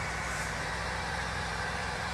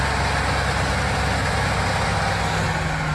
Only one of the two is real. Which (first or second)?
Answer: second